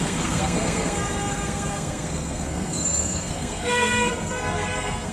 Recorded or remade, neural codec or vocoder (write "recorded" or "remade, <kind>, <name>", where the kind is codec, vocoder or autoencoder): remade, codec, SNAC